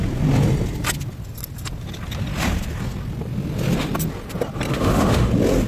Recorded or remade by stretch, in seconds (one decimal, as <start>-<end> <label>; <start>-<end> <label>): 0.0-4.7 recorded; 4.7-5.3 remade; 5.3-5.7 recorded